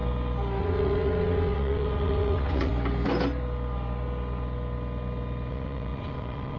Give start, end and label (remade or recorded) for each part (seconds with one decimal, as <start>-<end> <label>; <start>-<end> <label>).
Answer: 0.0-0.6 recorded; 0.6-2.7 remade; 2.7-5.5 recorded; 5.5-6.6 remade